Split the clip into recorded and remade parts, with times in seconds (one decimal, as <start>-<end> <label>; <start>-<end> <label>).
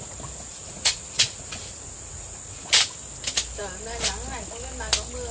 0.0-0.5 recorded; 0.5-2.7 remade; 2.7-5.3 recorded